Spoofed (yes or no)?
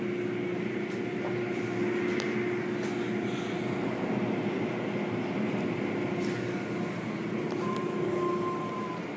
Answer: no